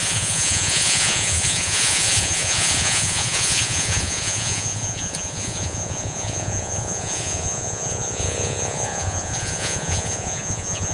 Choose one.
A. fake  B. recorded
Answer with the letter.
A